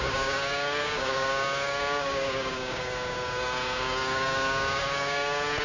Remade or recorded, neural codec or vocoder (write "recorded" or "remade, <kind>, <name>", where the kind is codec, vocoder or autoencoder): remade, codec, DAC